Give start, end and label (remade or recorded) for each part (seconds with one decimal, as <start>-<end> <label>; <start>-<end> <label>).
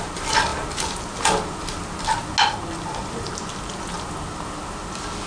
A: 0.0-5.3 recorded